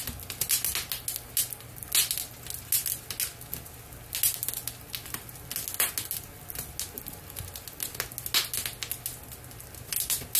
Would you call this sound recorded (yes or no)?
yes